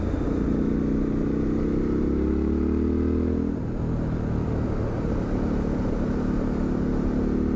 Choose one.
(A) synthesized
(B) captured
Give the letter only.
B